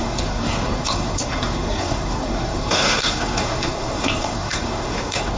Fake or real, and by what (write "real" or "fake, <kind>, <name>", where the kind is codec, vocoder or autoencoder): fake, codec, SNAC